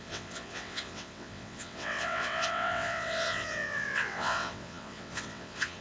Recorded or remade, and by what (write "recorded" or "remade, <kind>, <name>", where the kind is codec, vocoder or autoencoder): remade, vocoder, WaveNeXt